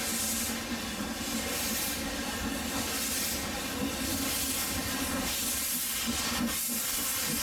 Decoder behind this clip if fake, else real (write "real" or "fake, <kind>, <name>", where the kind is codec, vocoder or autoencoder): real